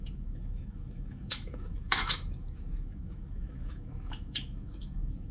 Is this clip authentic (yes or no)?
no